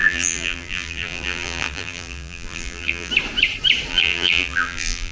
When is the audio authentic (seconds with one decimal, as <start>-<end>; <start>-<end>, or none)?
3.1-3.9

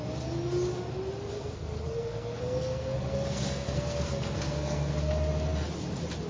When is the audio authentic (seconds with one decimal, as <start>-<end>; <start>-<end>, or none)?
0.0-1.3; 5.1-6.3

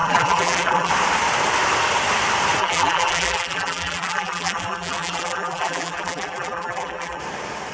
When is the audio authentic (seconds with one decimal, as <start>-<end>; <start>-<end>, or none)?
0.9-2.6; 7.2-7.7

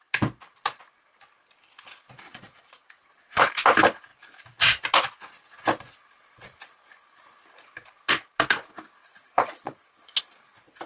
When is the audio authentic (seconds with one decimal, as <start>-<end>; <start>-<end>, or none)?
0.0-2.3; 3.5-9.0; 10.2-10.9